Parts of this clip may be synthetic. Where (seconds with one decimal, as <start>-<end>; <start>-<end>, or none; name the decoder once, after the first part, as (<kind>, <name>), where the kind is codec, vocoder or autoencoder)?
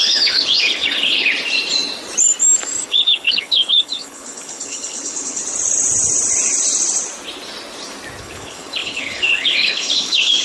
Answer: 0.0-1.3 (codec, HILCodec); 2.8-5.4; 8.2-10.4